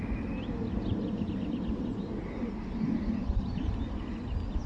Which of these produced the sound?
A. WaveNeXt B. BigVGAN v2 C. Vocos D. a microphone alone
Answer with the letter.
D